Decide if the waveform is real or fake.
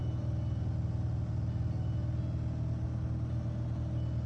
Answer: real